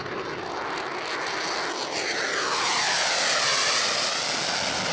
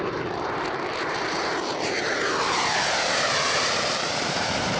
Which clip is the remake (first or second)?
second